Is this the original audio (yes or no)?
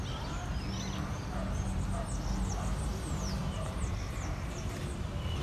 yes